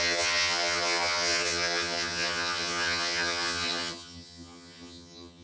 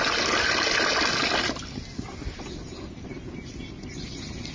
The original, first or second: second